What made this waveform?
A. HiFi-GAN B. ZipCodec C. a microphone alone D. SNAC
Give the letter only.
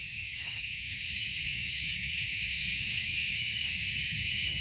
D